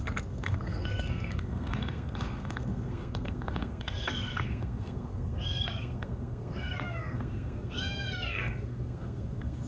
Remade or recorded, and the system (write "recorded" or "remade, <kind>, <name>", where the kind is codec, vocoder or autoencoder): remade, codec, SNAC